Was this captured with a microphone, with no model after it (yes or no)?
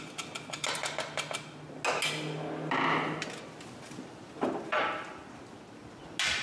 yes